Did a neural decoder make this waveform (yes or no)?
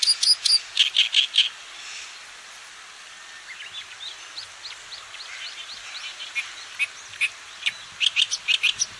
no